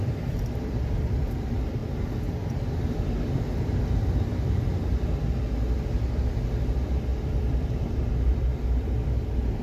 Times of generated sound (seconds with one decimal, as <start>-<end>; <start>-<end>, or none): 0.0-1.8; 6.1-9.6